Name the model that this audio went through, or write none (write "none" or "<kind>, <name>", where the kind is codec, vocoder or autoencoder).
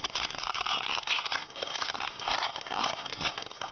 codec, SNAC